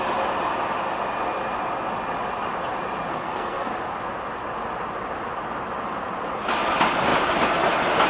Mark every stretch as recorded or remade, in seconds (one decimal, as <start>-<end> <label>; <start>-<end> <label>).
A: 0.0-3.1 recorded; 3.1-3.7 remade; 3.7-8.1 recorded